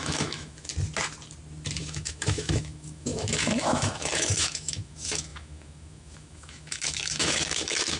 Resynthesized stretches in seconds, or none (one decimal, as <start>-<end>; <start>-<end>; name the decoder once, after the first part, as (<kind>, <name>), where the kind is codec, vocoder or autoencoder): 0.0-0.7 (autoencoder, DAC-VAE); 1.8-8.0